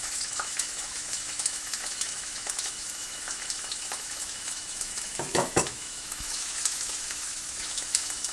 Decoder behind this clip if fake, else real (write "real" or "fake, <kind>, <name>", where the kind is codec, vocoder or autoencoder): fake, autoencoder, DAC-VAE